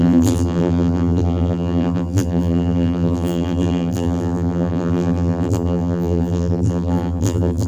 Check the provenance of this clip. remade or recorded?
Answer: remade